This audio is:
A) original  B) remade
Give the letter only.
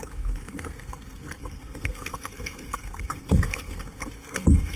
B